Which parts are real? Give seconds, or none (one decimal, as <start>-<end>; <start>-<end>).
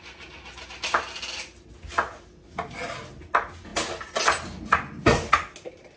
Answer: 0.0-6.0